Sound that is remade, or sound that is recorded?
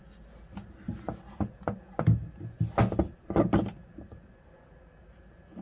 recorded